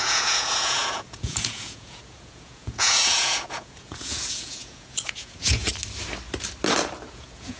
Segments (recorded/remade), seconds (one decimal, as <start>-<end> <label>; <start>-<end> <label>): 0.0-5.7 remade; 5.7-7.1 recorded; 7.1-7.6 remade